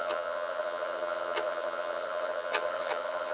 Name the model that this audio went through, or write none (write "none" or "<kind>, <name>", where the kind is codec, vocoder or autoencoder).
vocoder, HiFi-GAN